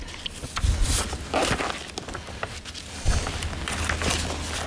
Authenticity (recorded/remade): recorded